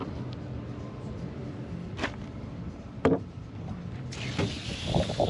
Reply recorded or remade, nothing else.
remade